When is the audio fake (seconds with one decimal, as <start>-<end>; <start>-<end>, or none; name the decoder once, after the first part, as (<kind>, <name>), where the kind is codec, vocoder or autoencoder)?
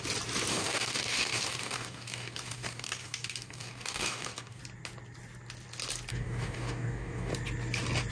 0.5-4.6 (codec, DAC); 6.1-7.3